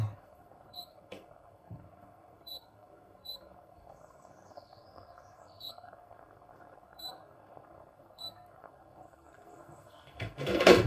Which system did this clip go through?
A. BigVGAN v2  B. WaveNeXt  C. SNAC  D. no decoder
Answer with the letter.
C